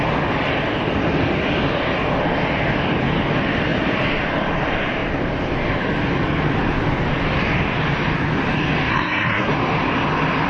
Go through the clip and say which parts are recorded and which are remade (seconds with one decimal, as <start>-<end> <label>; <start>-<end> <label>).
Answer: 0.0-8.9 recorded; 8.9-9.5 remade; 9.5-10.5 recorded